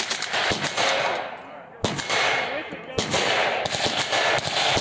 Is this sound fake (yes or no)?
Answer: no